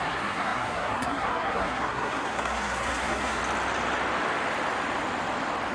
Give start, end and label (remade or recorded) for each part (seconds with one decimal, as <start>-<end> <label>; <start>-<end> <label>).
0.0-3.4 remade; 3.4-5.7 recorded